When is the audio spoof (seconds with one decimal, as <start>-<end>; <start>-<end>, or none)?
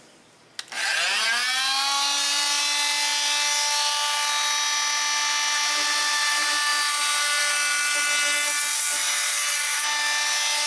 none